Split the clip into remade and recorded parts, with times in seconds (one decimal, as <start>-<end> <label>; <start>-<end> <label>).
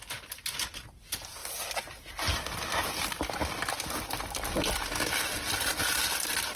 0.0-6.6 recorded